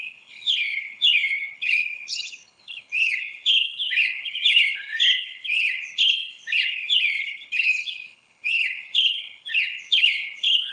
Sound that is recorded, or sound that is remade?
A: remade